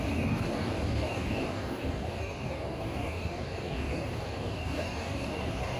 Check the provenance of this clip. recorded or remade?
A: remade